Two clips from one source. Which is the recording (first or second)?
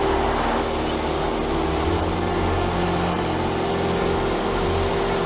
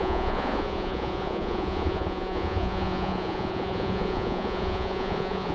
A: first